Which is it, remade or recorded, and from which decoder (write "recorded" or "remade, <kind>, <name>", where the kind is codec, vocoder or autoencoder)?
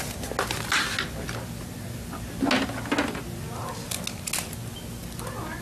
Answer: recorded